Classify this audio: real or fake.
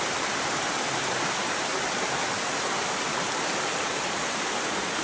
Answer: real